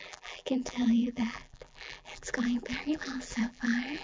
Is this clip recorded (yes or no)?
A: no